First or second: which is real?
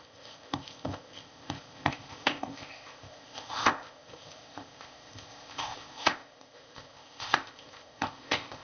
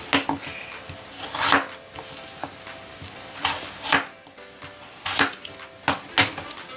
second